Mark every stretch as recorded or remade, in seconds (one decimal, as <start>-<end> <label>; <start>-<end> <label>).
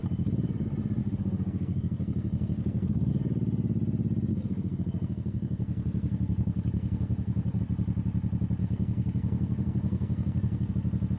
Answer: 0.0-1.0 recorded; 1.0-3.1 remade; 3.1-4.3 recorded; 4.3-7.6 remade; 7.6-8.6 recorded; 8.6-10.7 remade; 10.7-11.2 recorded